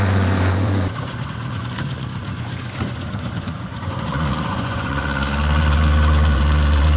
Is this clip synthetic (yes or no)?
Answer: yes